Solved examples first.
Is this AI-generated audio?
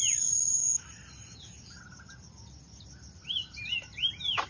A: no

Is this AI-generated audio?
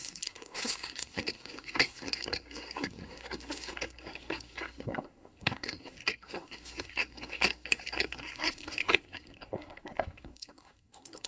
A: yes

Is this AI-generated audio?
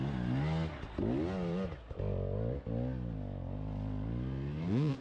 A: no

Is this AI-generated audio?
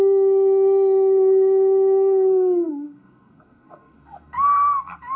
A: yes